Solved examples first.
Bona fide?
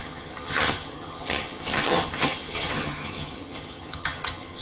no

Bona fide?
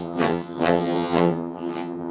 no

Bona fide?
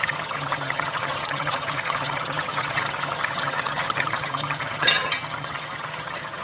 no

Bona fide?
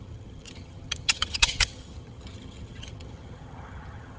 no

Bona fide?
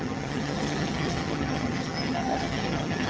no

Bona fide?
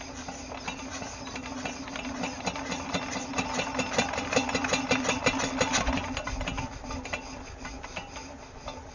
yes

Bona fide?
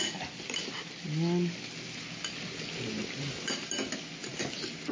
yes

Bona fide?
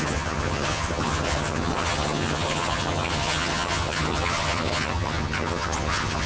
no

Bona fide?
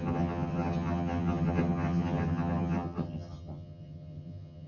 no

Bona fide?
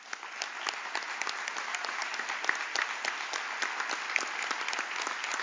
yes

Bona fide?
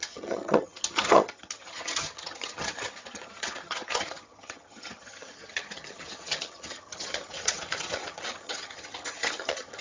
no